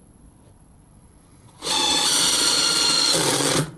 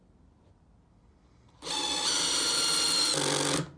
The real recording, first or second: second